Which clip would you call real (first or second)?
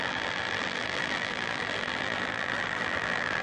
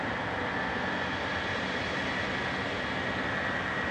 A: second